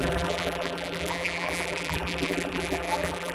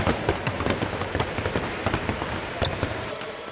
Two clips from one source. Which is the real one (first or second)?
second